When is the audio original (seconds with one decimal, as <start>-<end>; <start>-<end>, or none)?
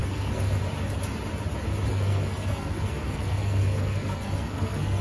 0.6-1.9